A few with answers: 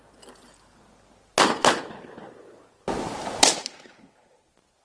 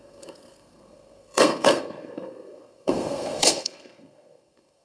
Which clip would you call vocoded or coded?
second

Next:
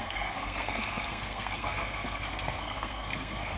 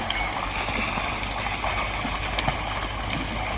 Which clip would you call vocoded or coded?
first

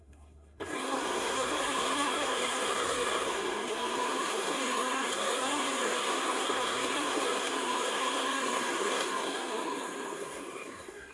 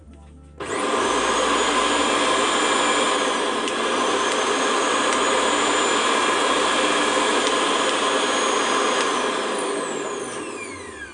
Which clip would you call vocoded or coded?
first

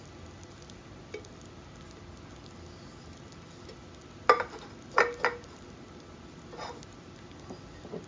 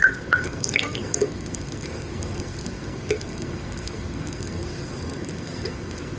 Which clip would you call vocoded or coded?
second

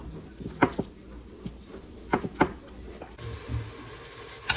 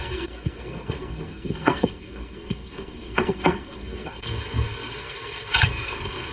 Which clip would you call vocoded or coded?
second